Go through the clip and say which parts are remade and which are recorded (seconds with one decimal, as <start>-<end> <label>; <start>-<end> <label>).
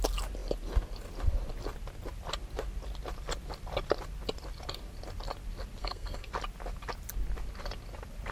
0.0-5.8 recorded; 5.8-6.3 remade; 6.3-8.3 recorded